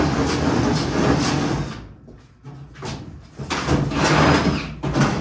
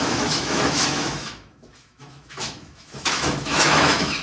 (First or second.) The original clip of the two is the first